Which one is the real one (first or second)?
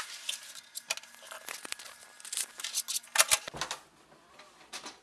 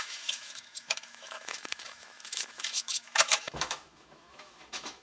first